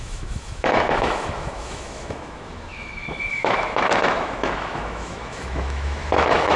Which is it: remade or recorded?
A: remade